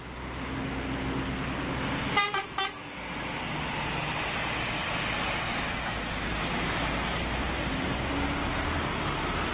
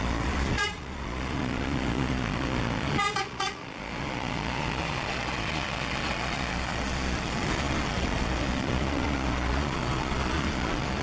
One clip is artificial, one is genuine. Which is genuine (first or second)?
first